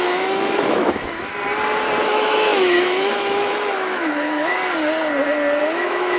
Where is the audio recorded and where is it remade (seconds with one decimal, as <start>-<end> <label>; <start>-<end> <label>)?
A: 0.0-1.3 remade; 1.3-2.0 recorded; 2.0-4.6 remade; 4.6-5.6 recorded; 5.6-6.2 remade